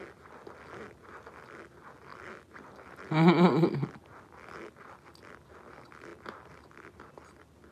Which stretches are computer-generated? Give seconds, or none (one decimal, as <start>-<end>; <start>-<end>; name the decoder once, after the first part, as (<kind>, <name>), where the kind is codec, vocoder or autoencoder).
none